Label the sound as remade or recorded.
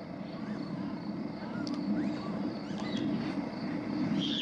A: recorded